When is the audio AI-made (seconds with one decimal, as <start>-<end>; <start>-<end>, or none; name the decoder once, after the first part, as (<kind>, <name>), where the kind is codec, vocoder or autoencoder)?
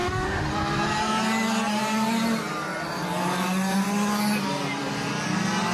0.0-0.5 (autoencoder, DAC-VAE)